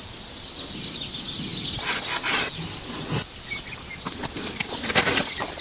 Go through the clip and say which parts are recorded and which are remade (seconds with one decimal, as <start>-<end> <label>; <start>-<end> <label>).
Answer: 0.0-5.6 recorded